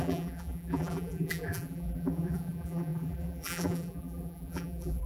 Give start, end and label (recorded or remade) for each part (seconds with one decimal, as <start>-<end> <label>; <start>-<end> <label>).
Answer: 0.0-5.1 remade